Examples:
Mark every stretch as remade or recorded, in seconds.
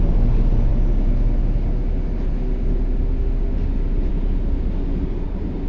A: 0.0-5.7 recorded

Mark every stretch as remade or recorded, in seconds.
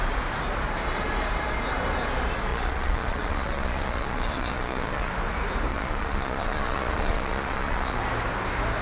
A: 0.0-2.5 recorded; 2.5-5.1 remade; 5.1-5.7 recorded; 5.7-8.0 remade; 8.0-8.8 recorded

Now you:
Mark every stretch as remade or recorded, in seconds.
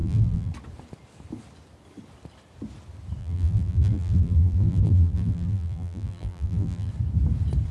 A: 0.0-0.5 remade; 0.5-3.2 recorded; 3.2-6.9 remade; 6.9-7.7 recorded